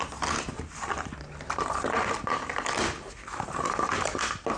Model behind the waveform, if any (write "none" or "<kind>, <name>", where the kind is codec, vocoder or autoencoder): none